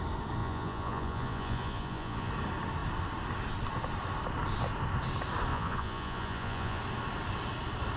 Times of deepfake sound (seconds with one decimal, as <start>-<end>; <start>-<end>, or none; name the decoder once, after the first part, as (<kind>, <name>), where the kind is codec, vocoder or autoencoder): 0.4-2.3 (vocoder, Vocos); 5.5-6.8